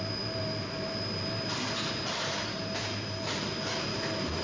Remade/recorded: remade